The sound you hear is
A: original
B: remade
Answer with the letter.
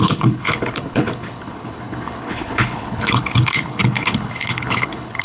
B